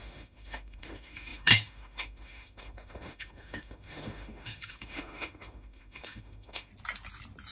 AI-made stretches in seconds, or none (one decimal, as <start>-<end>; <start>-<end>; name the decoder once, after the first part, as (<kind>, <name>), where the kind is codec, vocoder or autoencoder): 0.0-6.7 (autoencoder, DAC-VAE)